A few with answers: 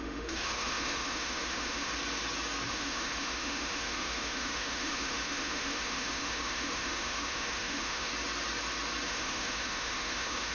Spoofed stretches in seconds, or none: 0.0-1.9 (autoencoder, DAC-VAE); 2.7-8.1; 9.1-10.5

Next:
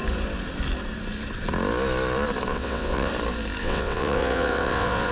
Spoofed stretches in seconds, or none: 2.5-3.1 (vocoder, WaveNeXt); 3.6-5.1

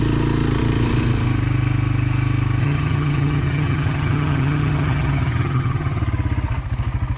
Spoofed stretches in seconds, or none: 2.6-6.0 (vocoder, HiFi-GAN)

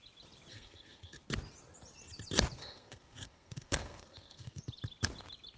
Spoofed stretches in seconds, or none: 0.5-1.2 (codec, SNAC); 2.6-4.6

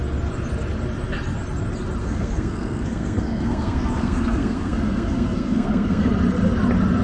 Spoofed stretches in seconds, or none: 2.0-6.1 (codec, SNAC)

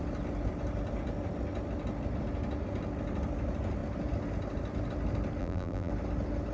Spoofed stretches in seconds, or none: 5.4-5.9 (vocoder, BigVGAN v2)